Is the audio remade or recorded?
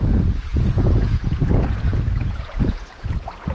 remade